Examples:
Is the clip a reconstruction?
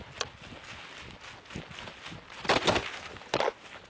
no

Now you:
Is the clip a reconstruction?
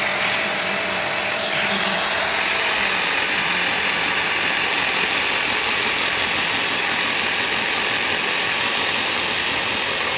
no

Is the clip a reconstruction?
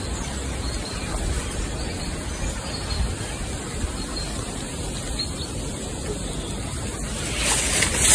no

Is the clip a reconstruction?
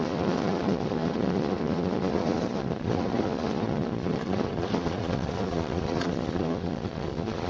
yes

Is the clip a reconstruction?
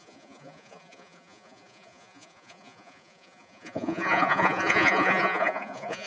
yes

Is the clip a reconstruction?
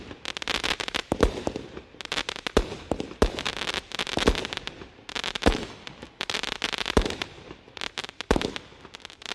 no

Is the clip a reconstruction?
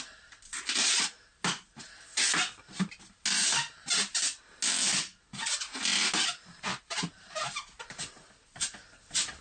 no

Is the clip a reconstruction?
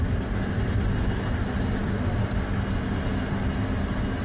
no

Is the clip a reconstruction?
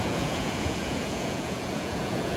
yes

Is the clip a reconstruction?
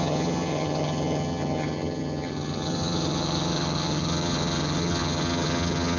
yes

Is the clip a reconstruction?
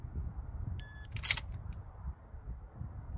no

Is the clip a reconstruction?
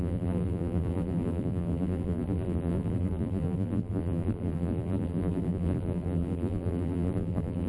yes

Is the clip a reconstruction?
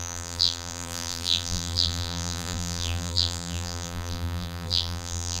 yes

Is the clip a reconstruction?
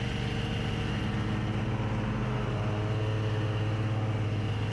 no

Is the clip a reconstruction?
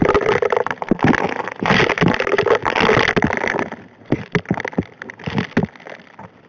no